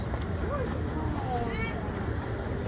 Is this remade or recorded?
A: recorded